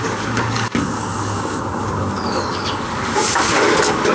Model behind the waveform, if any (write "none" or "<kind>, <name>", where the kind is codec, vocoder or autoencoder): codec, DAC